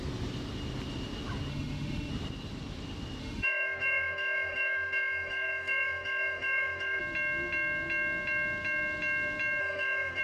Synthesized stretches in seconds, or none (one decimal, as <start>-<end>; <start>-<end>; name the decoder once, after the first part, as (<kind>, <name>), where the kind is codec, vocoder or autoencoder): 1.5-2.1 (autoencoder, DAC-VAE); 3.2-7.0; 9.6-10.2